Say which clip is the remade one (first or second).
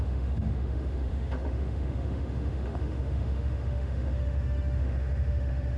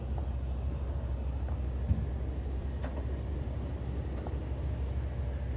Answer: first